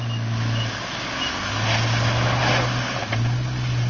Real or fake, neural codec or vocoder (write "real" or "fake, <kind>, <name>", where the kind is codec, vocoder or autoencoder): real